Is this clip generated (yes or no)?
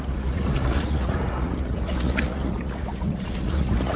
yes